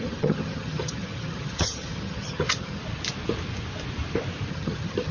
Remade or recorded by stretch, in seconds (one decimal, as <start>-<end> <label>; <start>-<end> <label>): 0.0-2.8 remade; 2.8-4.5 recorded; 4.5-5.1 remade